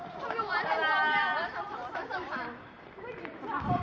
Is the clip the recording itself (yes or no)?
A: yes